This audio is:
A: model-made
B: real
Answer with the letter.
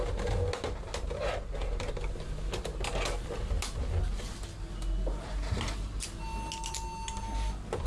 B